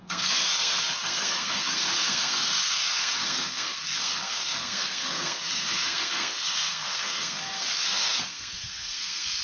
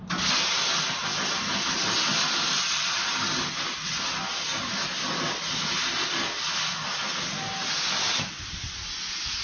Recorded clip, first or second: second